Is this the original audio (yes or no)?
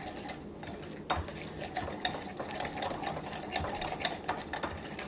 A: yes